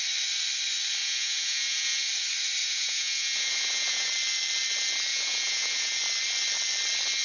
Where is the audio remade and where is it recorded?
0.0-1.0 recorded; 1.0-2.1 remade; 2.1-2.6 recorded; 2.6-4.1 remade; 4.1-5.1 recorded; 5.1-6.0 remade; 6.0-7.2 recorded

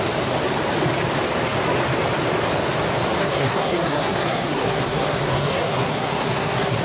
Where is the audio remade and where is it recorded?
0.0-3.2 recorded; 3.2-6.8 remade